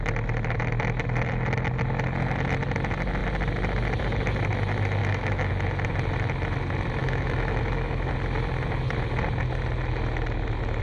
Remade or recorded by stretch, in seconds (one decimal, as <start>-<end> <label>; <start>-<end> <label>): 0.0-5.0 recorded; 5.0-5.5 remade; 5.5-7.0 recorded; 7.0-8.1 remade; 8.1-10.8 recorded

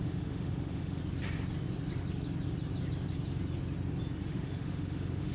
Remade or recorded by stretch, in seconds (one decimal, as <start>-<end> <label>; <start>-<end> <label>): 0.0-1.0 remade; 1.0-4.2 recorded; 4.2-5.3 remade